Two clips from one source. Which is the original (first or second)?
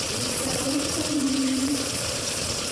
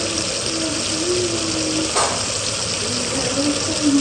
second